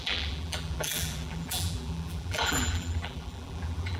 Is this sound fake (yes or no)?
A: yes